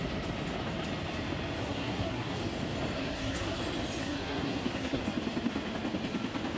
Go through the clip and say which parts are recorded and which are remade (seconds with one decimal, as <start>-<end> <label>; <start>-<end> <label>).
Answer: 0.0-1.6 recorded; 1.6-2.4 remade; 2.4-3.0 recorded; 3.0-3.6 remade; 3.6-4.0 recorded; 4.0-5.0 remade; 5.0-6.6 recorded